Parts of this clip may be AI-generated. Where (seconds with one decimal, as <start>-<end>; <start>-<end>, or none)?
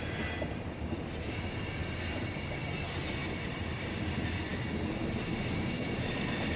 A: 3.2-3.9